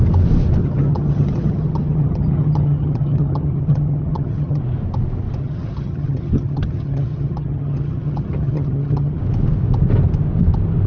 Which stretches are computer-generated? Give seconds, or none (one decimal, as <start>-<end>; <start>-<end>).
0.6-4.6; 5.4-9.2